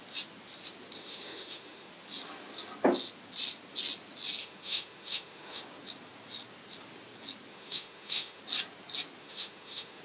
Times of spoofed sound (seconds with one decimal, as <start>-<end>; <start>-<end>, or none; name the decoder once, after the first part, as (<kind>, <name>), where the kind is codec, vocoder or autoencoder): 1.0-1.9 (autoencoder, DAC-VAE); 4.4-5.6; 7.5-8.4; 9.2-10.0